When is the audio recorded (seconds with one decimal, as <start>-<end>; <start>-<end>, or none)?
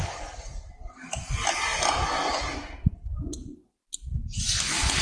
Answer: 0.0-5.0